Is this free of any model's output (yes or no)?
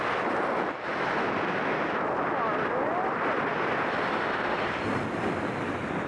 yes